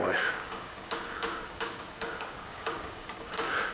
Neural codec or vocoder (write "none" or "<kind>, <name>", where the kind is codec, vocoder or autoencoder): codec, DAC